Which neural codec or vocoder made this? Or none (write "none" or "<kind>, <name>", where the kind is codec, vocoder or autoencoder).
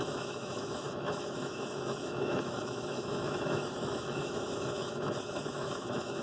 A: autoencoder, DAC-VAE